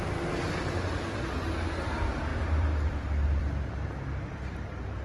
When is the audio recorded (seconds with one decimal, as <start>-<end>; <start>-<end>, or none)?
0.0-2.3; 3.7-5.0